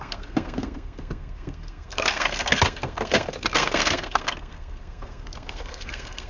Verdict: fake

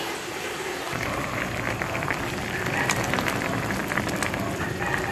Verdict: real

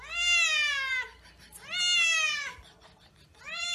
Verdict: real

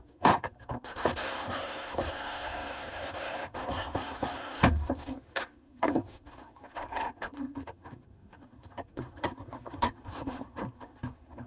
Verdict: fake